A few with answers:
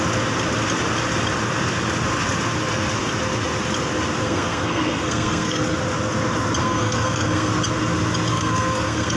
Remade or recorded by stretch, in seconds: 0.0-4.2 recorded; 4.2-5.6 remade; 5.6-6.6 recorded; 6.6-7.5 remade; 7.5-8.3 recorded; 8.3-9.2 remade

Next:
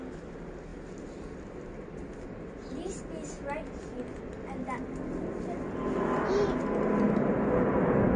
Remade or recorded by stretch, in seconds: 0.0-8.2 recorded

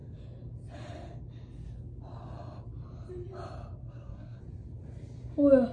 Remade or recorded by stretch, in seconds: 0.0-3.8 recorded; 3.8-4.4 remade; 4.4-5.7 recorded

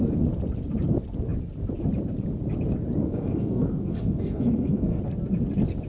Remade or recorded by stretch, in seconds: 0.0-3.0 recorded; 3.0-5.0 remade; 5.0-5.9 recorded

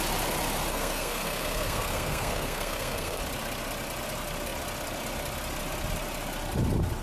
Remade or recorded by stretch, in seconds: 0.0-0.7 recorded; 0.7-3.2 remade; 3.2-7.0 recorded

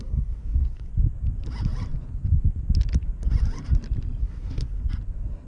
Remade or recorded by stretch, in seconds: 0.0-0.9 remade; 0.9-4.2 recorded; 4.2-4.8 remade; 4.8-5.5 recorded